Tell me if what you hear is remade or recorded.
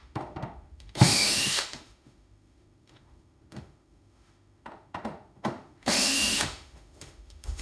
remade